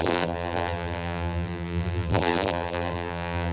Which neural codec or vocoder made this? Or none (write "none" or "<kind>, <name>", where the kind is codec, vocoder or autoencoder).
vocoder, BigVGAN v2